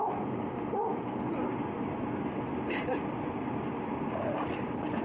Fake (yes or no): yes